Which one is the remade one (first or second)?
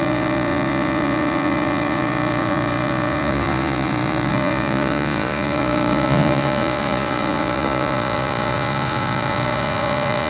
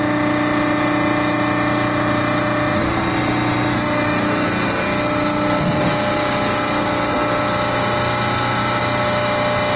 first